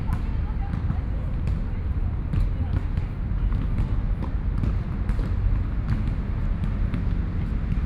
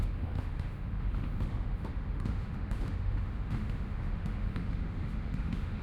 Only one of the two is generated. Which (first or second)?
second